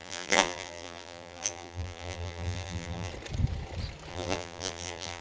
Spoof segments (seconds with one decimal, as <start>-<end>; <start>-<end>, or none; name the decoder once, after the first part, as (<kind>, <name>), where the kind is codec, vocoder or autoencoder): 0.0-3.1 (vocoder, BigVGAN v2); 4.1-5.2